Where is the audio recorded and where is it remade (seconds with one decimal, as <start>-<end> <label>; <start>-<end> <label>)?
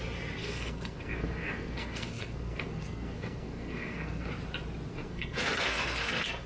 0.0-0.4 recorded; 0.4-4.3 remade; 4.3-4.9 recorded; 4.9-6.5 remade